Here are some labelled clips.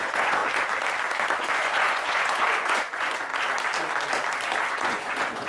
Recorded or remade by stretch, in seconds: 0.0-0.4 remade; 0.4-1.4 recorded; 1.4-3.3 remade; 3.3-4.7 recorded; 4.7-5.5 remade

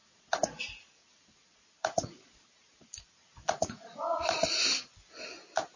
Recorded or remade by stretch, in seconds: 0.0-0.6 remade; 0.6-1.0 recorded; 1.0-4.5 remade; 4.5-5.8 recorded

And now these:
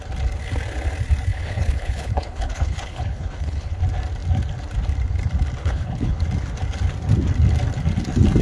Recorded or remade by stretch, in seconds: 0.0-1.3 recorded; 1.3-3.8 remade; 3.8-5.6 recorded; 5.6-6.2 remade; 6.2-8.4 recorded